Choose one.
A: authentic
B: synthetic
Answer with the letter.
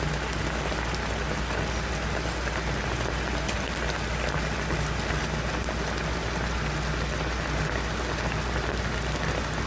A